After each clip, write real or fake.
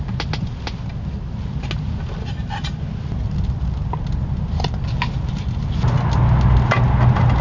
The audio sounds real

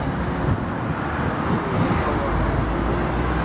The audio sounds real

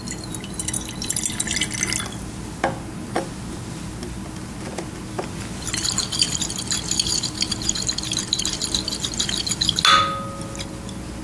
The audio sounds real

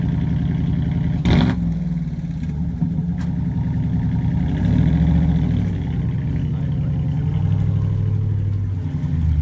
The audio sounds real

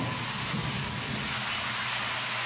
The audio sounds real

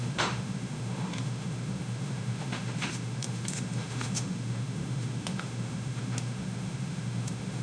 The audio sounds fake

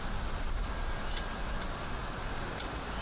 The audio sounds real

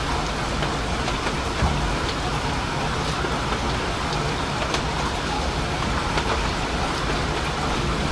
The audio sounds real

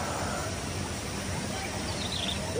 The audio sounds fake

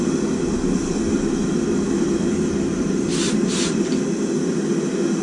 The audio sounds real